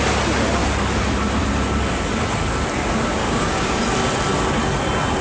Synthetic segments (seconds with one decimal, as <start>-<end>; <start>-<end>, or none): 3.2-3.8